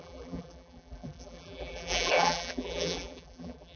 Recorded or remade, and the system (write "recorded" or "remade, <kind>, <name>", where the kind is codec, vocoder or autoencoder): remade, vocoder, BigVGAN v2